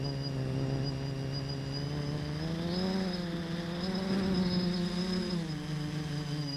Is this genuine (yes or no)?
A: yes